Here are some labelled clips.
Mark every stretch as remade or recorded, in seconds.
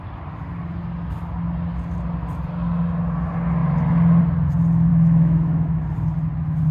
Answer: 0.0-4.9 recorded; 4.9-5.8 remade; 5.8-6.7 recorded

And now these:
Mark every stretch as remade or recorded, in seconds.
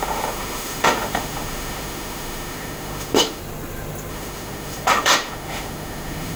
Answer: 0.0-3.4 remade; 3.4-4.1 recorded; 4.1-6.4 remade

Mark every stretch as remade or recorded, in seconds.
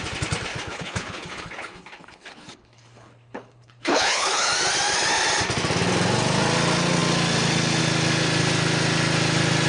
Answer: 0.0-0.5 recorded; 0.5-4.5 remade; 4.5-9.7 recorded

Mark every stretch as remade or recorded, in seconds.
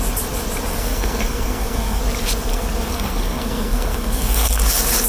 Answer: 0.0-0.7 recorded; 0.7-2.0 remade; 2.0-2.5 recorded; 2.5-4.5 remade; 4.5-5.1 recorded